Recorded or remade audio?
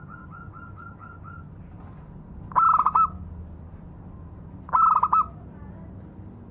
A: recorded